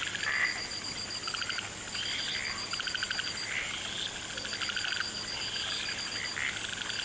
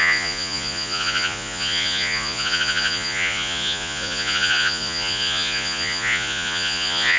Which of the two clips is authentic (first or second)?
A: first